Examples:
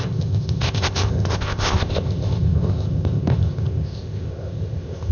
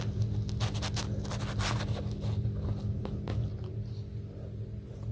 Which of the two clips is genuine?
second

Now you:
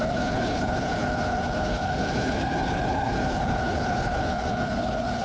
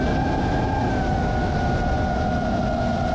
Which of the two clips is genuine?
second